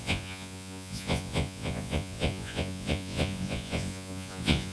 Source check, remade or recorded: remade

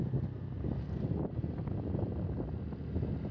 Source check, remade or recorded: recorded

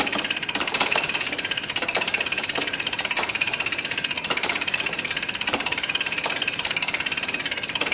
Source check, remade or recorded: remade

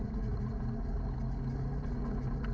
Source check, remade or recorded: recorded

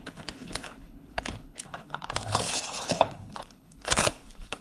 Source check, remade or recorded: remade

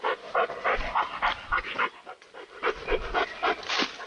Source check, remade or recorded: recorded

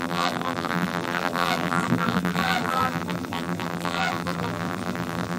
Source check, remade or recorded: remade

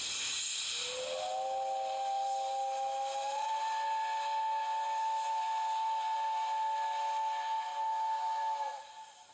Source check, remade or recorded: recorded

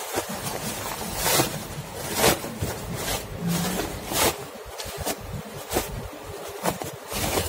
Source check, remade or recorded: remade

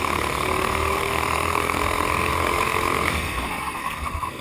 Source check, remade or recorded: remade